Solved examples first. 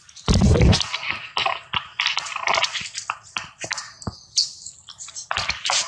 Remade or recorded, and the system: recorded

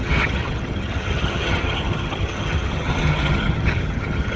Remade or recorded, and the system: remade, vocoder, HiFi-GAN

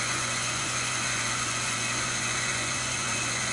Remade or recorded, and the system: remade, vocoder, Vocos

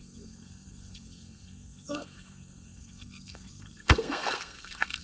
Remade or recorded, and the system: remade, codec, SNAC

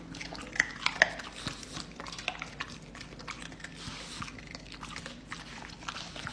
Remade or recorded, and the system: recorded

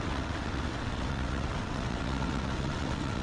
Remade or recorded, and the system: remade, vocoder, WaveNeXt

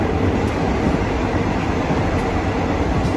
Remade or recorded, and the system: recorded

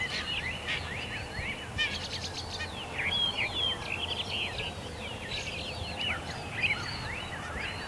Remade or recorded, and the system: recorded